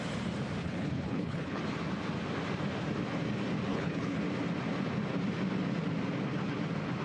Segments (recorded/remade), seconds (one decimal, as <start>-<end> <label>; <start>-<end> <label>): 0.0-0.6 recorded; 0.6-1.6 remade; 1.6-3.7 recorded; 3.7-4.2 remade; 4.2-7.0 recorded